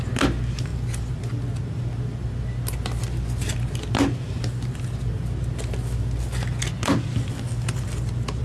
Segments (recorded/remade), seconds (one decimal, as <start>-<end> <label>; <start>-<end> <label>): 0.0-8.4 recorded